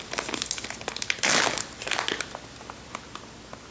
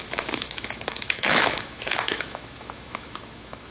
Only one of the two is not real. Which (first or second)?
second